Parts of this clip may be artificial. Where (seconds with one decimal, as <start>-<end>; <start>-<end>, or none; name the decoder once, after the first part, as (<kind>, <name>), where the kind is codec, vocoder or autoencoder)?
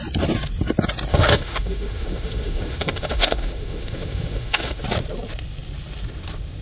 1.1-4.8 (autoencoder, DAC-VAE)